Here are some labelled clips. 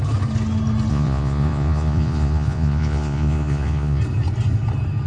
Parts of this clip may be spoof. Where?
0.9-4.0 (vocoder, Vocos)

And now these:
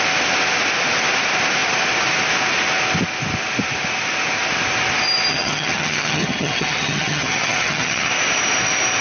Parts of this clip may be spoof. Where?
5.3-8.1 (vocoder, HiFi-GAN)

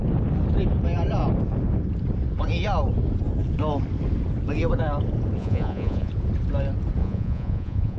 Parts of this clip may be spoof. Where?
5.4-6.1 (vocoder, Vocos); 7.0-8.0